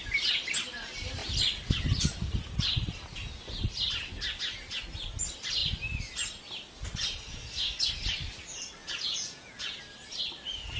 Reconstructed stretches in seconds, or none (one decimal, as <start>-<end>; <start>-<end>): 8.8-9.8